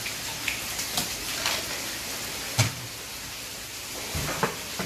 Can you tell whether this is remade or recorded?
recorded